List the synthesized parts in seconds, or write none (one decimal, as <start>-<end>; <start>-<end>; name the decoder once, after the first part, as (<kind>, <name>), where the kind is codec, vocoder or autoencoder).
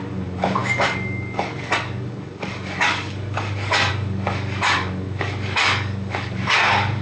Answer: 0.0-7.0 (codec, DAC)